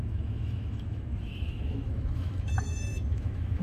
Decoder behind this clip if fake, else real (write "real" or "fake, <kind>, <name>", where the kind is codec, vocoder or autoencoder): fake, autoencoder, DAC-VAE